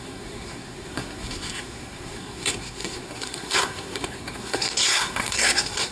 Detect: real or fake fake